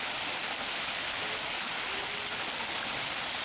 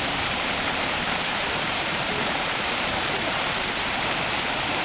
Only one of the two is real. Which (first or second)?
first